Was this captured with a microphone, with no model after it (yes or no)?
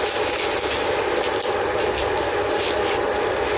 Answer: yes